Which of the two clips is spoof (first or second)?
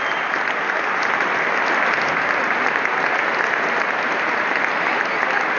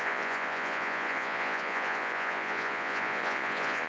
second